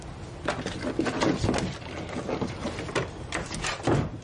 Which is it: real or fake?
real